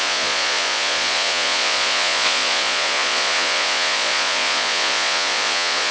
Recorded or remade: remade